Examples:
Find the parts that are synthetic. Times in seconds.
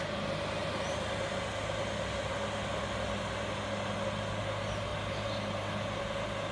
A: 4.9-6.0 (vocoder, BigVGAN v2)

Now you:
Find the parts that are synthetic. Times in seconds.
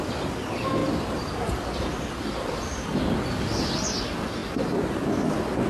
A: none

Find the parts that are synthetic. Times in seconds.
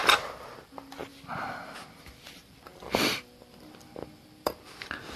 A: 0.0-1.1 (vocoder, BigVGAN v2); 2.3-5.2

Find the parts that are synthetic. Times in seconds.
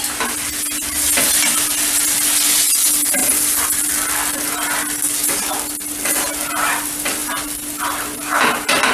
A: none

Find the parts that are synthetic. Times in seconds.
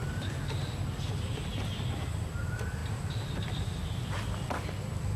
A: none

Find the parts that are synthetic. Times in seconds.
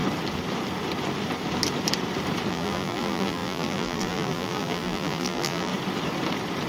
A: 2.5-5.7 (vocoder, BigVGAN v2)